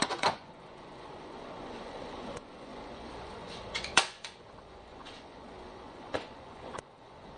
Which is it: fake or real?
fake